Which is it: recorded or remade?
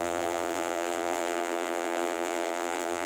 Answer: remade